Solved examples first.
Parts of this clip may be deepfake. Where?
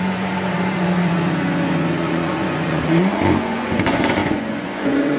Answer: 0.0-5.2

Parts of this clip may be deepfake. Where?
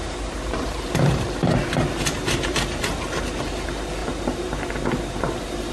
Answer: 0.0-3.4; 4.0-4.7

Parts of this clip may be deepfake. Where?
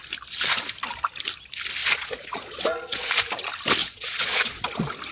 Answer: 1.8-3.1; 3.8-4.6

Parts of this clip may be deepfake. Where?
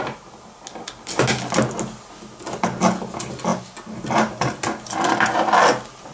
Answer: none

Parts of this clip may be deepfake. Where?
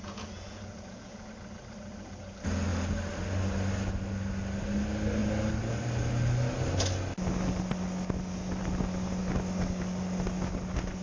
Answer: 0.0-1.3